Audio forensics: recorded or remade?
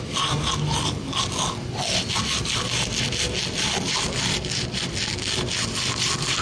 recorded